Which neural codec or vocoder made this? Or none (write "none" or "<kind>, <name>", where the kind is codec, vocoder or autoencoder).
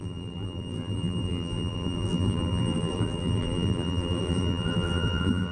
vocoder, BigVGAN v2